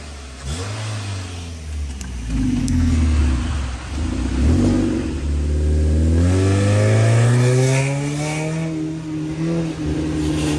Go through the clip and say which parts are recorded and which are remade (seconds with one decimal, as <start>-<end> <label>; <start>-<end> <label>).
0.0-2.6 recorded; 2.6-3.2 remade; 3.2-10.6 recorded